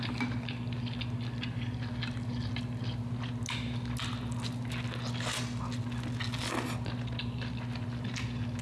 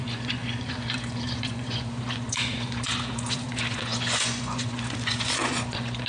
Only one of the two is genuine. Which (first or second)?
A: first